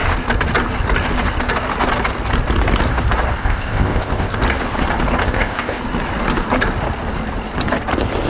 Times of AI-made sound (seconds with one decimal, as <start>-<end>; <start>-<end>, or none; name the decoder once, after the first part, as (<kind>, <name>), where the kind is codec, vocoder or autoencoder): 3.4-4.4 (codec, ZipCodec); 5.2-5.8